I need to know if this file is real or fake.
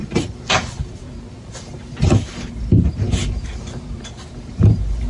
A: fake